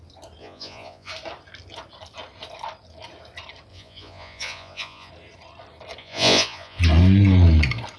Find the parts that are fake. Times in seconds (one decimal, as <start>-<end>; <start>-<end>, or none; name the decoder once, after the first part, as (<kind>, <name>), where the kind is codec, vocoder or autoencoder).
0.4-1.1 (vocoder, Vocos); 3.7-5.1; 6.0-6.8